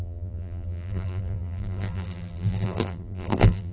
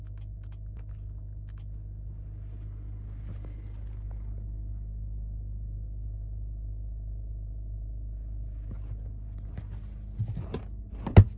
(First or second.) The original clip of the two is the second